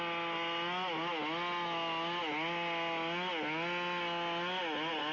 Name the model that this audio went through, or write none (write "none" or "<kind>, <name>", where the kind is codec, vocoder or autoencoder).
none